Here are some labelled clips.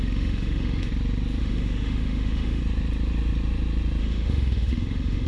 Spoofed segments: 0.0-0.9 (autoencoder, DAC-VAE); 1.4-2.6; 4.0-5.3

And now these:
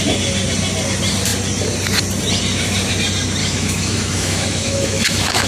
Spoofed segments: 3.4-5.5 (autoencoder, DAC-VAE)